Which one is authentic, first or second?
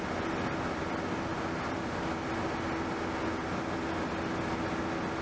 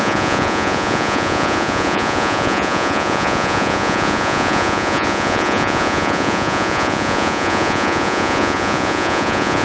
first